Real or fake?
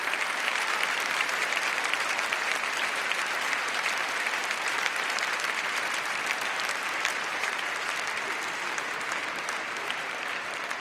fake